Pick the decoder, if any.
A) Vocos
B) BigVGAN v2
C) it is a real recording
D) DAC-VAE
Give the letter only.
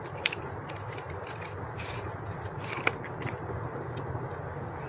C